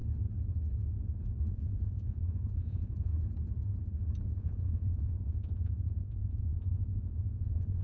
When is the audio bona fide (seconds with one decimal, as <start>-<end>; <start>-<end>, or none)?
0.0-1.5; 3.1-4.3